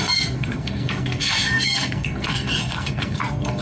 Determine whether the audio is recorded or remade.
remade